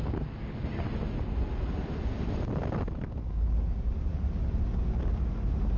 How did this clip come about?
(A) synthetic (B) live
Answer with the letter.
B